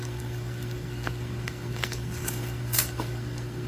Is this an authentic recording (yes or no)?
no